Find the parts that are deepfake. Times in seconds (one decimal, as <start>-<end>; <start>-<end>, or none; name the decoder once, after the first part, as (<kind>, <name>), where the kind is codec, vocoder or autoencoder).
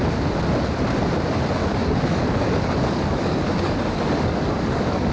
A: 1.6-5.1 (codec, DAC)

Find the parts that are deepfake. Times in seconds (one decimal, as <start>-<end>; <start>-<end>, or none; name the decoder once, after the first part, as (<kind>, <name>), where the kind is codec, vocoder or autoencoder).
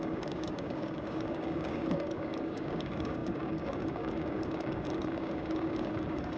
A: 0.0-6.4 (codec, DAC)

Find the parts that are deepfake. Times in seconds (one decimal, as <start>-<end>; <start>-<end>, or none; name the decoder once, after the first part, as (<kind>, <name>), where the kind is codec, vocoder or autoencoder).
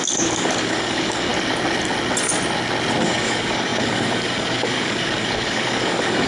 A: 0.0-1.3 (codec, DAC); 3.0-6.3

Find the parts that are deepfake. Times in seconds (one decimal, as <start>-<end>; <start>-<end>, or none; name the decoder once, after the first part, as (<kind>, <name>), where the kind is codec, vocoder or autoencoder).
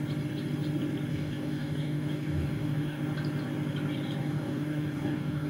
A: 1.1-3.0 (codec, DAC); 4.2-5.5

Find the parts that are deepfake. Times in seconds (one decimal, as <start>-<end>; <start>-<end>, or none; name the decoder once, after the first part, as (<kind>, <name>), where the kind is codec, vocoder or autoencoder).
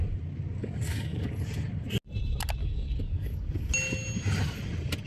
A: 0.6-1.3 (codec, DAC); 2.6-3.7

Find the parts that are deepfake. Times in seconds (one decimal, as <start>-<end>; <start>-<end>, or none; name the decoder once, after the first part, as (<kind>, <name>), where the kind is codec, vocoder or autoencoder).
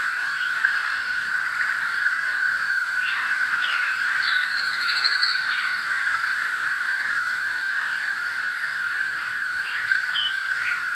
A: 0.0-1.3 (codec, DAC); 1.8-10.9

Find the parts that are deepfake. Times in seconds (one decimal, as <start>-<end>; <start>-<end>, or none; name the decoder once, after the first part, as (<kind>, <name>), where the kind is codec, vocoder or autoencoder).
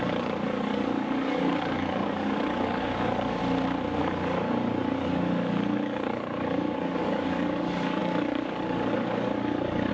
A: 0.0-3.4 (codec, DAC); 4.0-9.9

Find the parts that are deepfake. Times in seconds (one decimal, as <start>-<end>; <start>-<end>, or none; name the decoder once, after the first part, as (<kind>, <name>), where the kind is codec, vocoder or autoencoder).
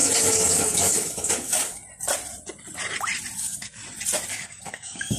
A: 0.0-1.8 (codec, DAC); 3.4-3.8; 4.3-5.2